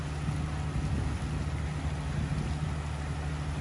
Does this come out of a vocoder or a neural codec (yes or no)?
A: no